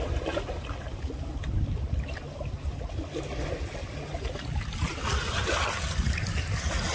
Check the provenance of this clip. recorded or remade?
recorded